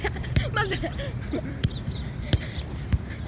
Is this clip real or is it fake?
fake